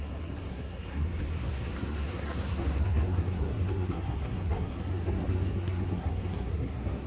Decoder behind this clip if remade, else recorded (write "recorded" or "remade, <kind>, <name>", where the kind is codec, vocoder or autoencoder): remade, codec, SNAC